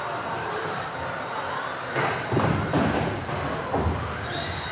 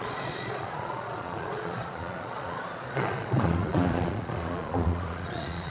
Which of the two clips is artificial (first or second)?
second